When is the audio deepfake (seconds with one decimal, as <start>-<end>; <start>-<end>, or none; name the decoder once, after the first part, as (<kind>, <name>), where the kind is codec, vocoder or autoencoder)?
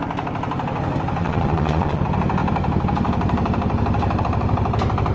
1.2-2.0 (vocoder, Vocos)